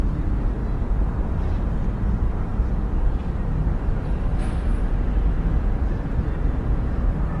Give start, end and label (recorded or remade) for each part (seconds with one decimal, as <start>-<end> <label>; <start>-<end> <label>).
0.0-0.6 remade; 0.6-1.2 recorded; 1.2-4.3 remade; 4.3-6.6 recorded; 6.6-7.4 remade